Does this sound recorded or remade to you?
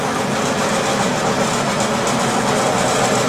recorded